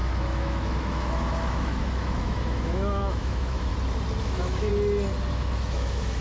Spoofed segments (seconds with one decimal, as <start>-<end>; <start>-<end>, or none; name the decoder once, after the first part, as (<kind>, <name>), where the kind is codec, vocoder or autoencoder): 0.0-3.7 (autoencoder, DAC-VAE); 4.2-4.7; 5.3-6.2